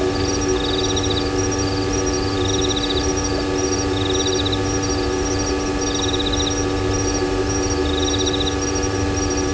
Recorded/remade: recorded